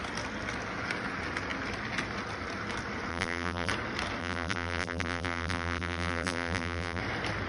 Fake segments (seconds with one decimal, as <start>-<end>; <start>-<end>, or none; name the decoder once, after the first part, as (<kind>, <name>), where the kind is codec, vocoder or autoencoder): 3.1-3.7 (vocoder, BigVGAN v2); 4.2-7.0